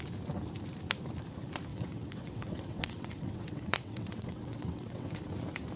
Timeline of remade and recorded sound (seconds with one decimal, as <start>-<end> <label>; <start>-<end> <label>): 0.0-1.7 recorded; 1.7-5.2 remade; 5.2-5.8 recorded